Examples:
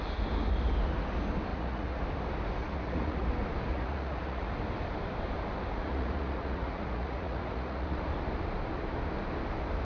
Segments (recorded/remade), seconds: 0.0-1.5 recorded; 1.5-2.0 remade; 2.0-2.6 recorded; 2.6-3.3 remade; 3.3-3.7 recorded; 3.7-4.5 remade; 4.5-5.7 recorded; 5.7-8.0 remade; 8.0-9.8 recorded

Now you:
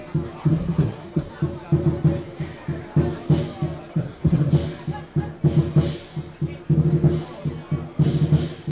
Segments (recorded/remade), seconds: 0.0-0.4 recorded; 0.4-1.3 remade; 1.3-3.9 recorded; 3.9-4.5 remade; 4.5-8.7 recorded